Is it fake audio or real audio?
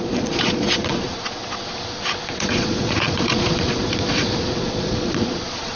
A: fake